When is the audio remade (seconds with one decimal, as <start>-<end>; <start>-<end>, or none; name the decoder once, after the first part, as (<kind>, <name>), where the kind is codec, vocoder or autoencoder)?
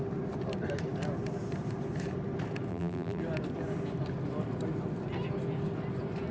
2.7-3.2 (vocoder, BigVGAN v2)